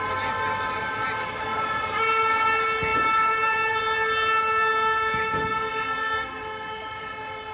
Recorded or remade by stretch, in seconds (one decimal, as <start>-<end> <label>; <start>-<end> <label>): 0.0-2.9 recorded; 2.9-3.8 remade; 3.8-7.5 recorded